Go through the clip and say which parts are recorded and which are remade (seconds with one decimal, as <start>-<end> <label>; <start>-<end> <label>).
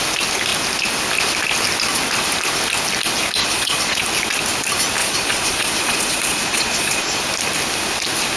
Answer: 0.0-3.4 recorded; 3.4-4.0 remade; 4.0-5.0 recorded; 5.0-7.2 remade; 7.2-8.4 recorded